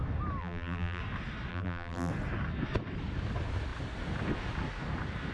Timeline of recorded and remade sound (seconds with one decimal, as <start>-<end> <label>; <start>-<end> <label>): 0.0-0.4 recorded; 0.4-1.0 remade; 1.0-1.5 recorded; 1.5-2.1 remade; 2.1-5.3 recorded